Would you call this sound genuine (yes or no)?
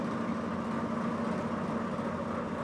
yes